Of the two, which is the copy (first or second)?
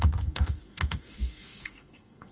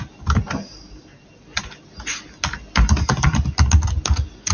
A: first